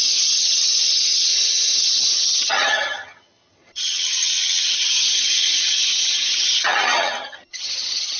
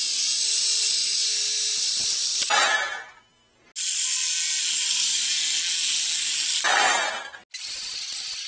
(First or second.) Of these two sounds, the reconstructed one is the first